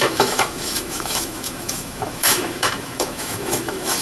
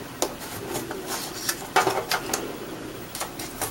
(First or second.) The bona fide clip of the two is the second